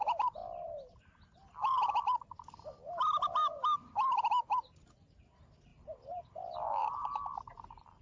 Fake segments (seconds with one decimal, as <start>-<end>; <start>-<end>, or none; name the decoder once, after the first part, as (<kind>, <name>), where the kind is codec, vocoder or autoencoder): 5.7-6.2 (vocoder, BigVGAN v2); 6.8-8.0